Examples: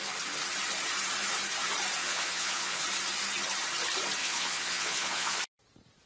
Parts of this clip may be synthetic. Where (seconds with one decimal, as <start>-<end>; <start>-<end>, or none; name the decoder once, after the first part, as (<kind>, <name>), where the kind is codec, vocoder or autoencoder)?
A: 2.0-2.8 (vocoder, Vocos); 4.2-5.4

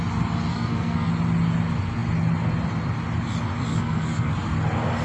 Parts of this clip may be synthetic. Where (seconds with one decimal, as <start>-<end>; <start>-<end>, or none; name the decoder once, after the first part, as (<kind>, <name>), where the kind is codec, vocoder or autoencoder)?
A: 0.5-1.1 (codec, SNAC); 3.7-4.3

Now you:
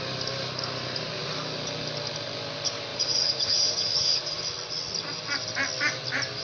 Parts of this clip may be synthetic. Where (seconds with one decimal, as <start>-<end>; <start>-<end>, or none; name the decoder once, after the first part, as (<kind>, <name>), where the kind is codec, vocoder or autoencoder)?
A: 2.9-4.4 (vocoder, Vocos)